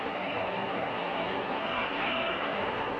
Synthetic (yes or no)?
yes